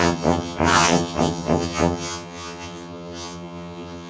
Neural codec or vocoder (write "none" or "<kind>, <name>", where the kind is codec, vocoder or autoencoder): vocoder, HiFi-GAN